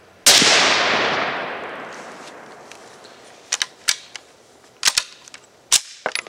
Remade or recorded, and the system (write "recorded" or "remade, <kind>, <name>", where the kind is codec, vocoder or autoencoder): recorded